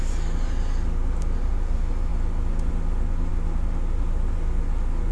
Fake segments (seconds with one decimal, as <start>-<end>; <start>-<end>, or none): none